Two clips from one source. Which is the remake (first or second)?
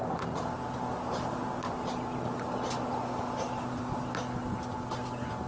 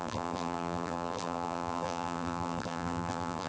second